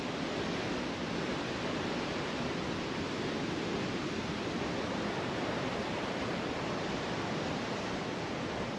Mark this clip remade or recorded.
recorded